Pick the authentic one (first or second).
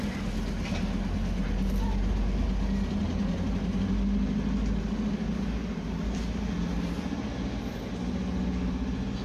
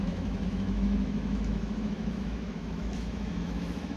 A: first